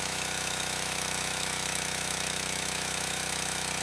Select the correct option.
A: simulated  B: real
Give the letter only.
A